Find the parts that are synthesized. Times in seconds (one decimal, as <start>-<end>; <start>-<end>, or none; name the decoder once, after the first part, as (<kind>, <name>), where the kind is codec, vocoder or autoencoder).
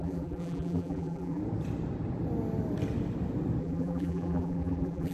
0.0-1.4 (vocoder, BigVGAN v2); 3.6-5.1